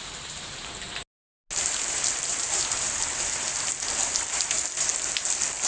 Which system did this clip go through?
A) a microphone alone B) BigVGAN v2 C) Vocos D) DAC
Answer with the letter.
A